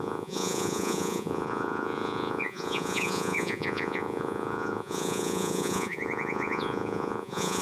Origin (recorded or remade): remade